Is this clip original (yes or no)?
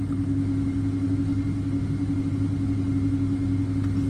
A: yes